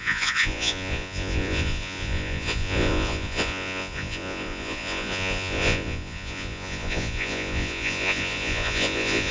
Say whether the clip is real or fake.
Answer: fake